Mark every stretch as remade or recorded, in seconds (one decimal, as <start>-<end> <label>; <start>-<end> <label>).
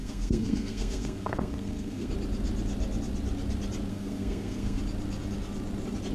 0.0-2.1 remade; 2.1-3.9 recorded; 3.9-4.8 remade; 4.8-6.1 recorded